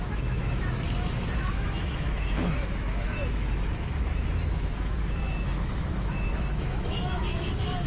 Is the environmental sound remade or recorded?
remade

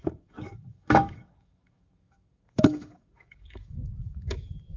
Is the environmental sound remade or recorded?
remade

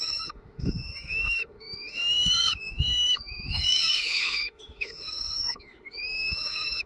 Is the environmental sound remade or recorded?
remade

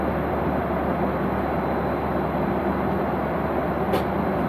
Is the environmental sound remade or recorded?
recorded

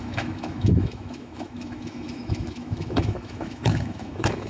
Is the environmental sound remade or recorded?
remade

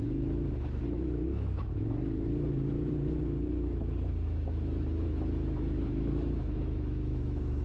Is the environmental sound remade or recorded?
remade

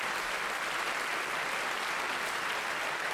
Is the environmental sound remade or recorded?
recorded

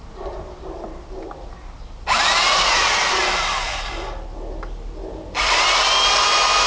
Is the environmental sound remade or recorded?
recorded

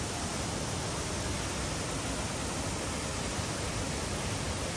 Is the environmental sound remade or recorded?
recorded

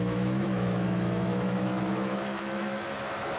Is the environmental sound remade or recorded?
remade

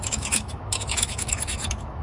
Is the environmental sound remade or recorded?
remade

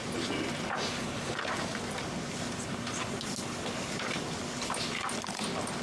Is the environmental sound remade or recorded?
recorded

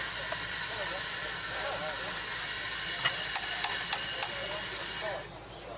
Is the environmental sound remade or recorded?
recorded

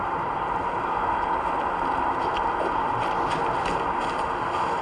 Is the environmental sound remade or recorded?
recorded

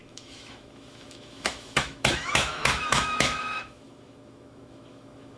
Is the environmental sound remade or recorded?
remade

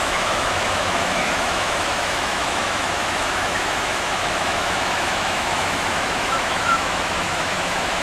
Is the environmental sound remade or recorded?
remade